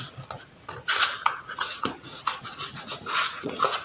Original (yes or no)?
no